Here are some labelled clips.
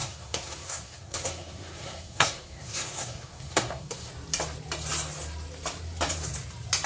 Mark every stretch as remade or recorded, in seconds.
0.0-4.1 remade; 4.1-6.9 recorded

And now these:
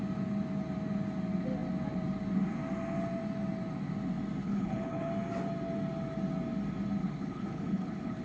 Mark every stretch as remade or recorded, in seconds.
0.0-4.4 recorded; 4.4-5.1 remade; 5.1-7.0 recorded; 7.0-8.2 remade